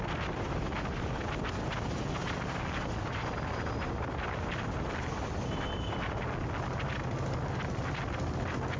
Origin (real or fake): real